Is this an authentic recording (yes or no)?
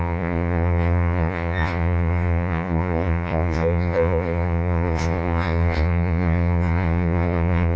no